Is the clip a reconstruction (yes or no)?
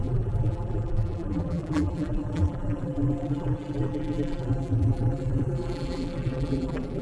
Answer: yes